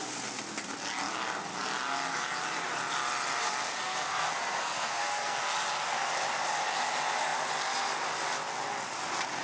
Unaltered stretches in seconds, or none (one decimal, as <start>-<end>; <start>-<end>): 0.0-3.4; 5.4-9.4